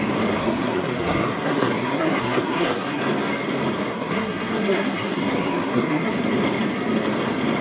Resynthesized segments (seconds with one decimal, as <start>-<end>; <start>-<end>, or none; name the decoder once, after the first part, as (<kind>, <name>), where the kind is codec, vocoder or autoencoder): 0.4-3.0 (codec, SNAC); 3.9-6.1

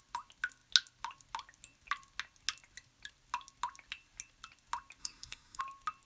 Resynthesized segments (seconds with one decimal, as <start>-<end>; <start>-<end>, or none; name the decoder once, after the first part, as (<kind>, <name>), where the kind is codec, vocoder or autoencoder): 5.0-5.6 (codec, SNAC)